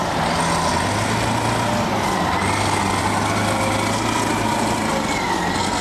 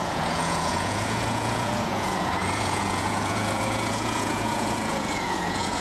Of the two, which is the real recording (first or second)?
first